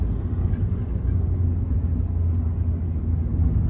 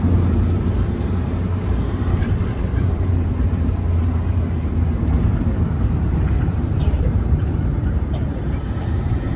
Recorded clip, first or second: first